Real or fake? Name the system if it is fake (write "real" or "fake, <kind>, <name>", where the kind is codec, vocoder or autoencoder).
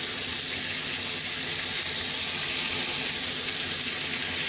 real